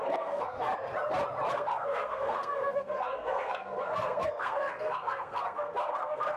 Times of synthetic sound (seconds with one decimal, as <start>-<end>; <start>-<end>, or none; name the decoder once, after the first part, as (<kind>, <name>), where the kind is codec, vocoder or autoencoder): 0.0-0.7 (codec, SNAC); 1.5-6.4